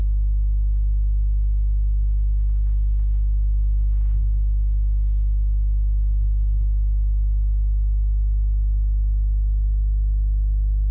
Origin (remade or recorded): recorded